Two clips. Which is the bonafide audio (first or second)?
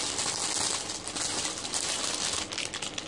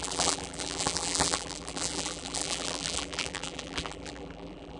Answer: first